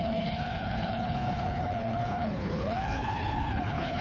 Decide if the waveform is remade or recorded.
remade